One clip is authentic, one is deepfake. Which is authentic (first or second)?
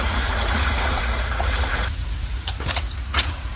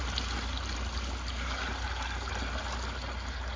second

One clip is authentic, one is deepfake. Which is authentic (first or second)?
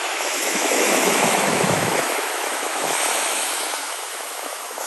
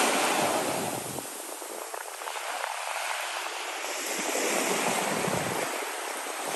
second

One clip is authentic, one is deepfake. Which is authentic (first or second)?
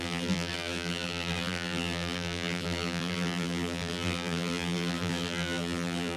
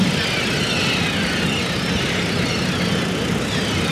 second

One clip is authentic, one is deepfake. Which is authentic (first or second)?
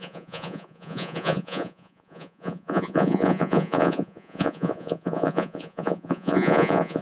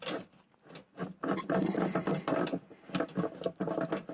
second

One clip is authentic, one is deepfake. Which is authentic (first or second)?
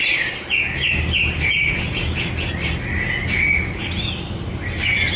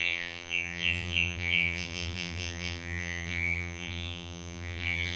first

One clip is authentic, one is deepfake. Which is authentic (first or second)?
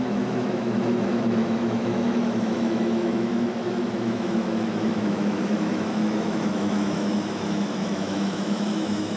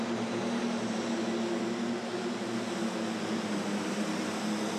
second